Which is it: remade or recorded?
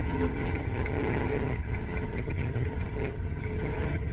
remade